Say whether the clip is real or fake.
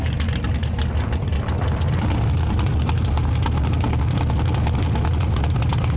real